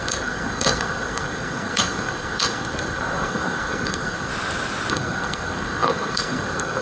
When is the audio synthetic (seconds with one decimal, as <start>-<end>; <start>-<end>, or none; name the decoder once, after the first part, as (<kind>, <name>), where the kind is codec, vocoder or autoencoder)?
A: 0.0-4.3 (codec, SNAC); 4.9-6.8